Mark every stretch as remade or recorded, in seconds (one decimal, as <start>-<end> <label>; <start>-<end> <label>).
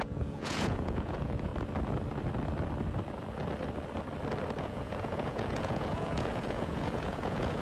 0.0-1.5 remade; 1.5-4.6 recorded; 4.6-7.6 remade